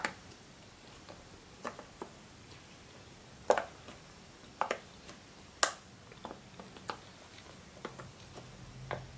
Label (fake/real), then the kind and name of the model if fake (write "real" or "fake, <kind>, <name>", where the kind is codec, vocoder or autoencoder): real